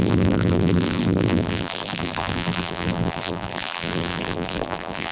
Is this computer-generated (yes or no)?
yes